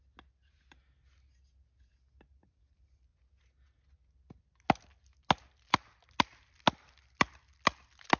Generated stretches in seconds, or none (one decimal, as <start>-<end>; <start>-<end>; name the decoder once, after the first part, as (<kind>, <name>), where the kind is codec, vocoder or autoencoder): none